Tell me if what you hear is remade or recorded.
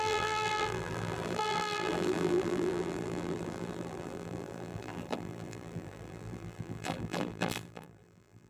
remade